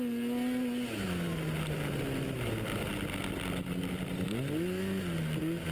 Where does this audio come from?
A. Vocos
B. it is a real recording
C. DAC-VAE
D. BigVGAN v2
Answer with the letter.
B